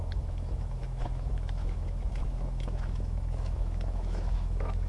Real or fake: fake